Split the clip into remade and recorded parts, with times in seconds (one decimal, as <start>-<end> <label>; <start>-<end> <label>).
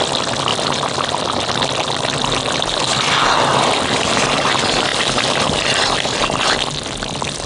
0.0-7.5 recorded